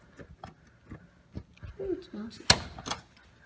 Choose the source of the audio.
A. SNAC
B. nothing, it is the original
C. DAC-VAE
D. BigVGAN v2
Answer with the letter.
B